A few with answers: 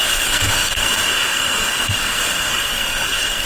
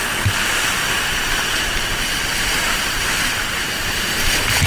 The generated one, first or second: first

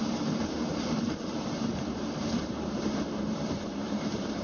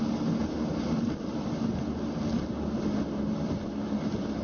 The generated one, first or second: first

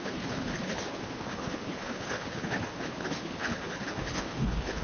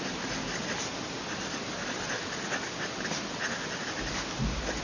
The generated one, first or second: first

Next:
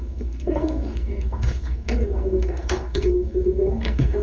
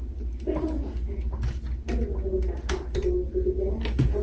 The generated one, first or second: first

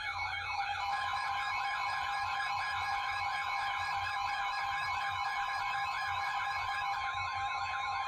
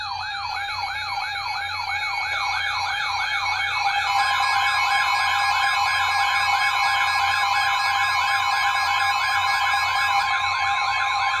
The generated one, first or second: first